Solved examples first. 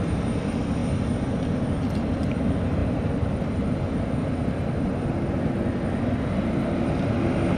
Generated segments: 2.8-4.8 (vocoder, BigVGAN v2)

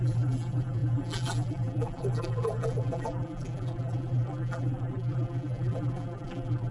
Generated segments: 0.0-6.7 (vocoder, BigVGAN v2)

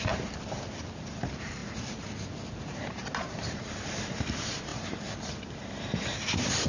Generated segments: 0.0-1.6 (vocoder, BigVGAN v2); 2.5-4.7; 5.3-6.7